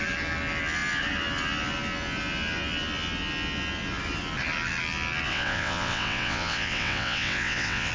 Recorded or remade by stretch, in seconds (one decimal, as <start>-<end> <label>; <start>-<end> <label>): 0.0-5.3 recorded; 5.3-7.9 remade